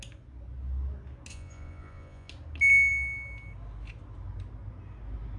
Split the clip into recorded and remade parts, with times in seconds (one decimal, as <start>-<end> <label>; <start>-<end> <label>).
0.0-1.3 recorded; 1.3-2.3 remade; 2.3-5.4 recorded